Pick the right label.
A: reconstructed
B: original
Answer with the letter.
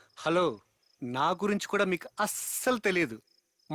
B